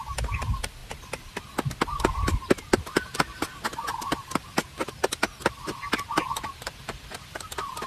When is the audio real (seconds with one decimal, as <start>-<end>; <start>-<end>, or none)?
0.0-7.9